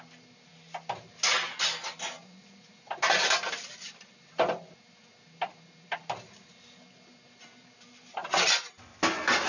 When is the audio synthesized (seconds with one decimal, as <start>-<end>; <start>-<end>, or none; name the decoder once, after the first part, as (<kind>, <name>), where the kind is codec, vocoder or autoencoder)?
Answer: none